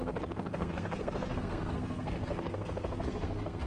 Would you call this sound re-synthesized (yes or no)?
yes